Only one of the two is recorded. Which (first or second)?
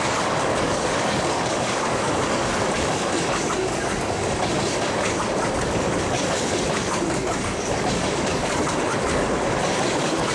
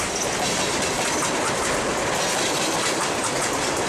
second